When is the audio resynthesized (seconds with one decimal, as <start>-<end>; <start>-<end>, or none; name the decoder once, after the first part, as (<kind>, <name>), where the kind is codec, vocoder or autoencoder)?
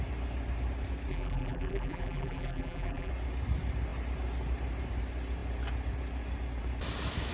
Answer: 1.1-3.1 (vocoder, BigVGAN v2)